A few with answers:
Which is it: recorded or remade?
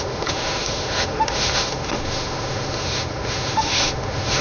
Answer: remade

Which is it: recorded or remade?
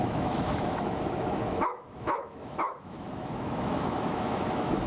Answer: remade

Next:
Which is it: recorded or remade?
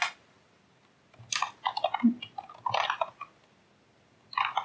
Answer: recorded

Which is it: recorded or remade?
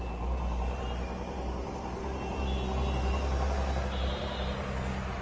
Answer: recorded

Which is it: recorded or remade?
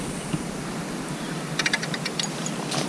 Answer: recorded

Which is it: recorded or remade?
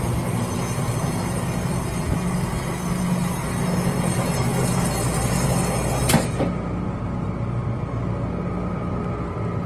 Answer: recorded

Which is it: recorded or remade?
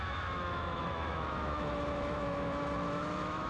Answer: remade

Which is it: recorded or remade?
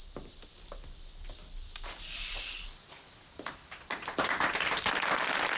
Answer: recorded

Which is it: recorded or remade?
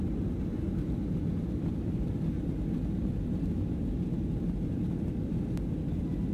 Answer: recorded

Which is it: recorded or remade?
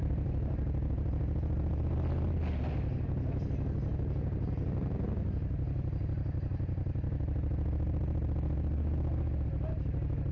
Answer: recorded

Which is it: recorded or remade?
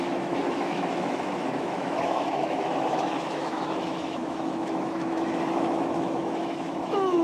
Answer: remade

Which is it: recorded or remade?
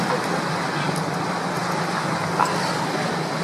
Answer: recorded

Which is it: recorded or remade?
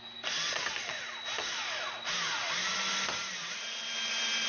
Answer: recorded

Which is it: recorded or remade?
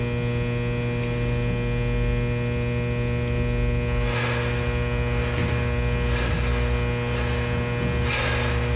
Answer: recorded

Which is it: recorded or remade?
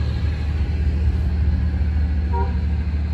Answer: recorded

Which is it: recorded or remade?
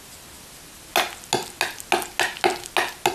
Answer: recorded